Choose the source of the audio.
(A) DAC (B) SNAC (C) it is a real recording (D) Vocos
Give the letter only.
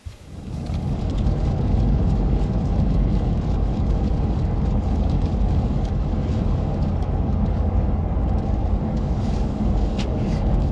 A